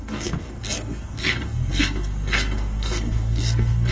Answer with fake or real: fake